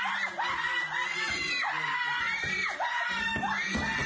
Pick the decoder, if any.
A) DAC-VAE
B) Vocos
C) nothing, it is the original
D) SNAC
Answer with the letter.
C